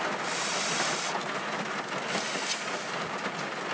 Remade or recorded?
recorded